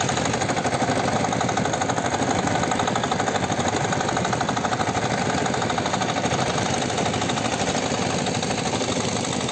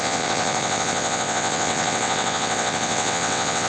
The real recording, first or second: first